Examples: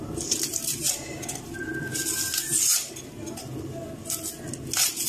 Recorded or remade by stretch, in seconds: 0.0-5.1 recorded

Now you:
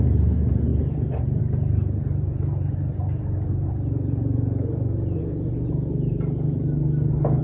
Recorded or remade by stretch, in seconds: 0.0-0.7 recorded; 0.7-1.4 remade; 1.4-7.4 recorded

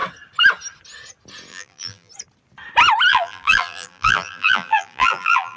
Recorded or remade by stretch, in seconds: 0.0-1.5 recorded; 1.5-2.1 remade; 2.1-3.1 recorded; 3.1-5.6 remade

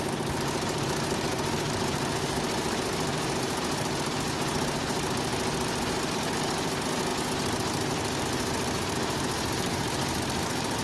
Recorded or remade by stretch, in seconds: 0.0-10.8 recorded

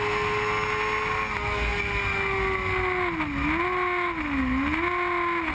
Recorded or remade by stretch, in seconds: 0.0-5.5 recorded

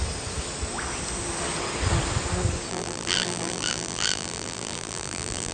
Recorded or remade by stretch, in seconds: 0.0-2.7 recorded; 2.7-5.5 remade

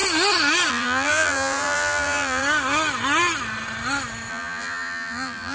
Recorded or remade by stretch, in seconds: 0.0-0.7 recorded; 0.7-2.4 remade; 2.4-4.3 recorded; 4.3-5.5 remade

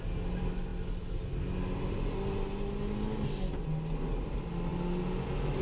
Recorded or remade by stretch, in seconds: 0.0-5.6 recorded